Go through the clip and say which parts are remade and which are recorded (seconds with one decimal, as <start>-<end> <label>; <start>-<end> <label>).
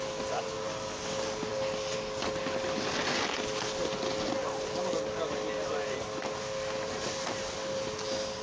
0.0-8.4 recorded